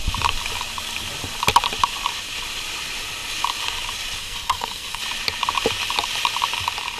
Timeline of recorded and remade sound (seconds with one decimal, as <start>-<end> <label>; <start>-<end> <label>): 0.0-4.2 recorded; 4.2-5.0 remade; 5.0-7.0 recorded